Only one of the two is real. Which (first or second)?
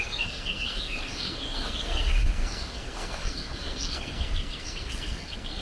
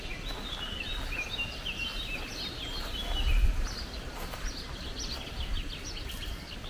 second